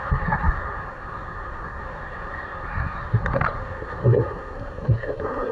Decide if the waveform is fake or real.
fake